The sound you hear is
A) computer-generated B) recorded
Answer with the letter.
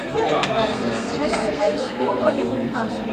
A